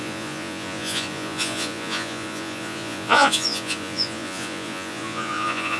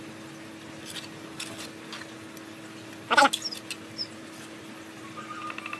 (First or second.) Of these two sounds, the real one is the second